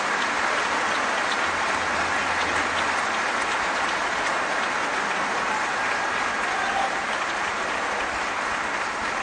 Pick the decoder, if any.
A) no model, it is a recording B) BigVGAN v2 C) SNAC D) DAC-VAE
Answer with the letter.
A